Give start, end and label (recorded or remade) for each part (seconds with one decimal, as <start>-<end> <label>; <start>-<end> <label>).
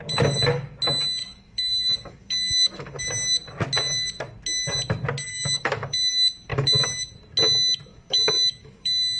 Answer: 0.0-1.2 recorded; 1.2-3.0 remade; 3.0-5.3 recorded; 5.3-6.1 remade; 6.1-6.5 recorded; 6.5-7.1 remade; 7.1-7.9 recorded; 7.9-9.2 remade